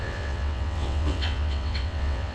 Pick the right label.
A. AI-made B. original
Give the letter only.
A